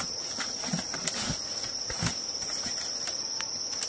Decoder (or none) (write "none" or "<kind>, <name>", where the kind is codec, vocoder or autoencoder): none